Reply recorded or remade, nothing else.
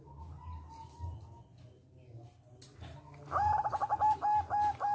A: recorded